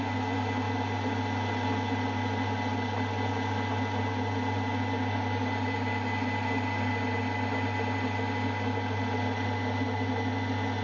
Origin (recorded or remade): recorded